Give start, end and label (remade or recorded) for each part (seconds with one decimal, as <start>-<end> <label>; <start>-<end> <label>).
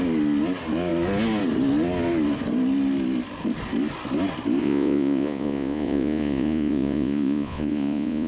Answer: 0.0-4.6 recorded; 4.6-8.3 remade